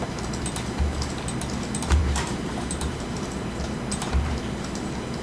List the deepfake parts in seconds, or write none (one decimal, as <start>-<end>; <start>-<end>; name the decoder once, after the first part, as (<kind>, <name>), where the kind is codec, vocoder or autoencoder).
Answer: 2.0-4.8 (vocoder, BigVGAN v2)